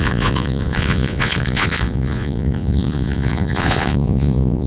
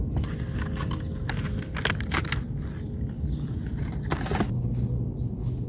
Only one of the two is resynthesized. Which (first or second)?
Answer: first